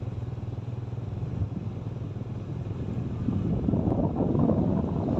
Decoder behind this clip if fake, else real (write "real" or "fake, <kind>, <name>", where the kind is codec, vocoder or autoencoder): real